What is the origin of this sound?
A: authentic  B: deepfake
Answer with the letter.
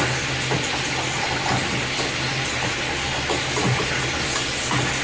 A